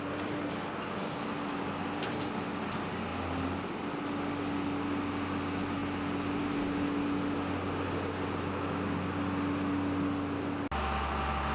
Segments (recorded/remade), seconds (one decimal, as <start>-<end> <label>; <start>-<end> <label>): 0.0-11.5 recorded

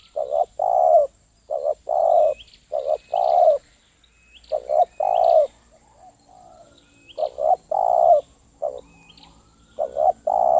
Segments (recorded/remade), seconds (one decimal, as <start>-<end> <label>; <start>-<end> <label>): 0.0-10.6 recorded